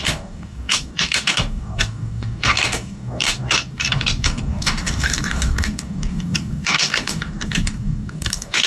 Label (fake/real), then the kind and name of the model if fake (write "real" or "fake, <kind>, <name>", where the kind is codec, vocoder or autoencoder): fake, codec, DAC